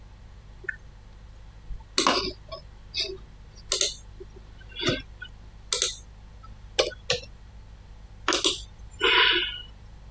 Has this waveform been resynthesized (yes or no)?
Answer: no